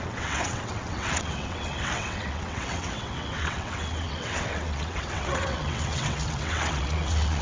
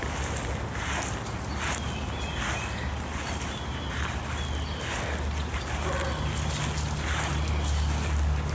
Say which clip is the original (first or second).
second